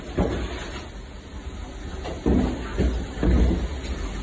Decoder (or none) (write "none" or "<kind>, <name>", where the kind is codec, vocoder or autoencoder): none